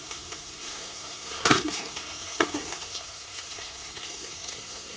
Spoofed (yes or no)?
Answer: yes